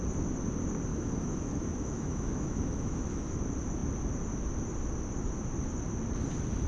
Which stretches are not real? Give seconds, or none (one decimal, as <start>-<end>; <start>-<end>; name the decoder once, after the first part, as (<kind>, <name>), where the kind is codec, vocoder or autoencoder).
0.9-3.4 (autoencoder, DAC-VAE)